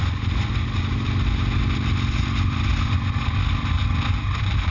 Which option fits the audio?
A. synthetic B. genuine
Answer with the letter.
B